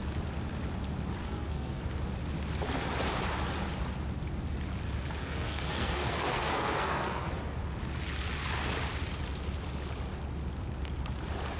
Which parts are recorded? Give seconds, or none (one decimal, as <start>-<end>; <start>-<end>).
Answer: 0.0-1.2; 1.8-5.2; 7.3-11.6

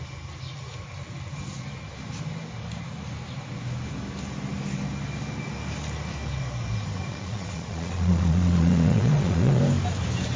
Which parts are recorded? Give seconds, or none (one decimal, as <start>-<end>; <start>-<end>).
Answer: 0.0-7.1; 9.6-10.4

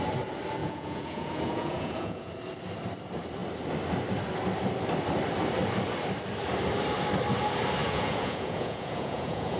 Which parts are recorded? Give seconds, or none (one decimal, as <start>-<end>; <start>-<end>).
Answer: 0.0-0.6; 2.3-7.8